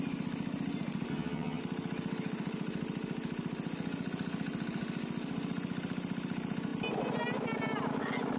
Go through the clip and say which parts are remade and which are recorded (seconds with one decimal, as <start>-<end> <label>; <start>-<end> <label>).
0.0-1.1 recorded; 1.1-1.6 remade; 1.6-8.4 recorded